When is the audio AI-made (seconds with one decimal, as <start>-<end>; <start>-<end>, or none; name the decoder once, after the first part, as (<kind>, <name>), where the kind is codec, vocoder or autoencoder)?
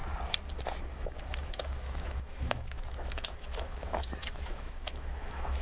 0.9-5.6 (autoencoder, DAC-VAE)